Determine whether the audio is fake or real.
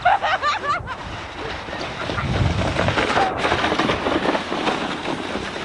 real